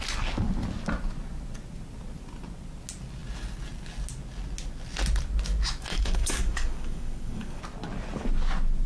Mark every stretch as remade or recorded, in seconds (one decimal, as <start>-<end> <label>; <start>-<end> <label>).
0.0-5.9 recorded; 5.9-7.6 remade; 7.6-8.9 recorded